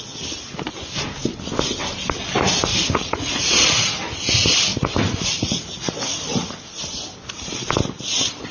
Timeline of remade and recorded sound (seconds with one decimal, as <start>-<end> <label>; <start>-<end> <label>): 0.0-2.7 recorded; 2.7-3.9 remade; 3.9-4.7 recorded; 4.7-6.7 remade; 6.7-8.5 recorded